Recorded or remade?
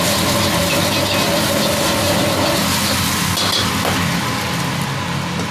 recorded